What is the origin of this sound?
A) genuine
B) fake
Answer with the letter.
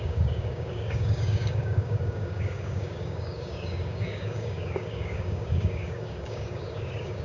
B